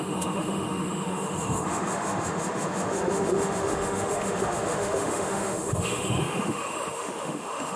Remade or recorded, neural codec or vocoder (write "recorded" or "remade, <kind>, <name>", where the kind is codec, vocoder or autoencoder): remade, autoencoder, DAC-VAE